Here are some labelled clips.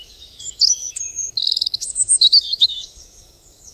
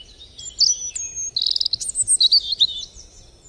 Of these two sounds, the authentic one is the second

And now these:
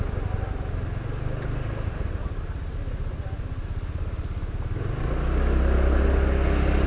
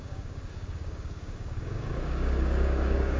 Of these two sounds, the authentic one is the first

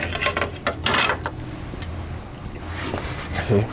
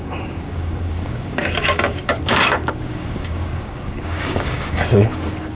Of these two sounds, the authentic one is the first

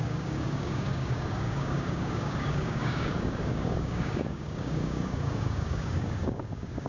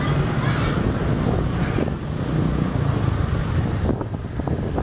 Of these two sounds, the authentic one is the second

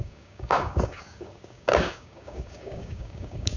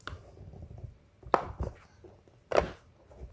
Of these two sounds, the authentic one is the second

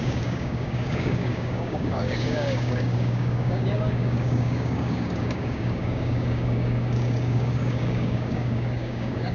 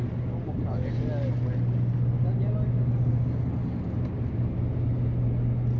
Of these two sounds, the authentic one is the second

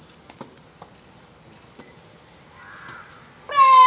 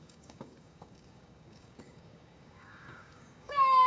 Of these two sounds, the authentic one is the first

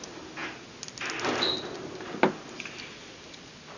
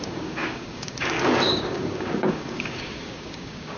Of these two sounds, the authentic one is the first